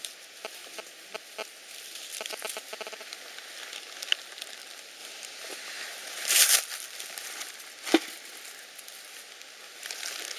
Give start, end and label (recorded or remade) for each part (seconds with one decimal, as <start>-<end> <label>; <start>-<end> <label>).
0.0-5.0 recorded; 5.0-6.4 remade; 6.4-10.4 recorded

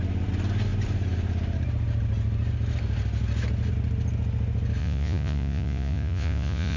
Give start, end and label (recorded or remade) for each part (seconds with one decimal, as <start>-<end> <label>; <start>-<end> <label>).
0.0-4.8 recorded; 4.8-6.8 remade